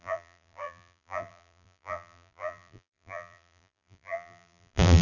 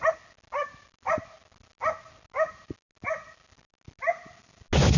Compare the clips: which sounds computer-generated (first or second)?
first